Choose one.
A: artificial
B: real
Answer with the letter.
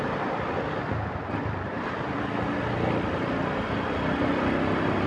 B